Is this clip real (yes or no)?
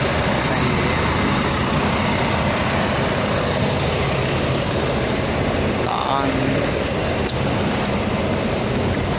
yes